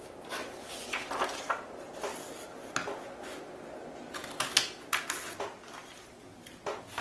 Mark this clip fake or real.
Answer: real